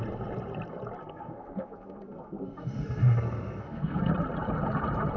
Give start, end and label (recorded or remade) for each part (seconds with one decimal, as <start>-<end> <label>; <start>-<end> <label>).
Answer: 0.0-1.0 recorded; 1.0-4.1 remade; 4.1-5.2 recorded